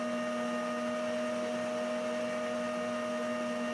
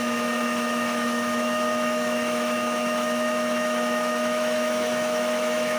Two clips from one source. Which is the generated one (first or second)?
second